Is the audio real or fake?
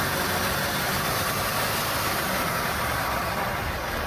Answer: real